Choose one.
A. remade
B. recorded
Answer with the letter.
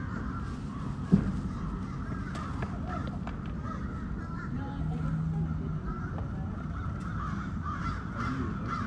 B